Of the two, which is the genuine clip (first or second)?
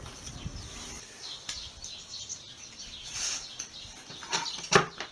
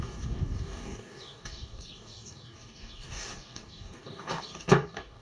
first